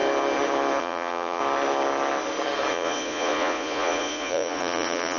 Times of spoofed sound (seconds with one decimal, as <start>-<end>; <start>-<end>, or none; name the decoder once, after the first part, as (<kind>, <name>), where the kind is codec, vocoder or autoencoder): 0.8-1.4 (vocoder, Vocos); 2.7-5.2